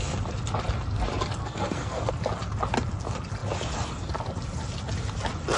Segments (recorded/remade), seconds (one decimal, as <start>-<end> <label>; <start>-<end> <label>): 0.0-1.4 recorded; 1.4-2.1 remade; 2.1-5.6 recorded